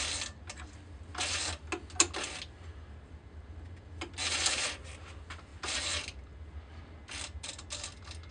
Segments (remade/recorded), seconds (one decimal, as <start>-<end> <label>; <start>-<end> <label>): 0.0-8.3 recorded